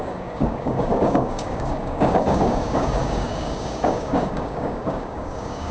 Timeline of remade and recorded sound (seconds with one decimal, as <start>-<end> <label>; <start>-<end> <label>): 0.0-5.7 remade